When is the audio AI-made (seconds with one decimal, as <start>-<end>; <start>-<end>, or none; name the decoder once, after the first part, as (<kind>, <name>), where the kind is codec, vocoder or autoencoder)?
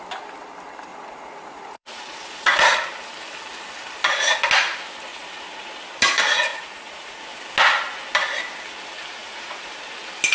0.9-2.8 (vocoder, Vocos); 5.1-5.7; 6.5-7.2; 9.2-9.7